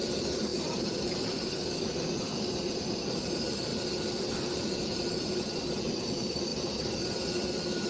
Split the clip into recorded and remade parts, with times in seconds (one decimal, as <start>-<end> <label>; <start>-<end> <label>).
0.0-3.7 remade; 3.7-4.2 recorded; 4.2-4.9 remade; 4.9-5.8 recorded; 5.8-6.5 remade; 6.5-7.9 recorded